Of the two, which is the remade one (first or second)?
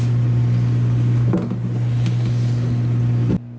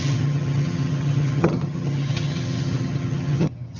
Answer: second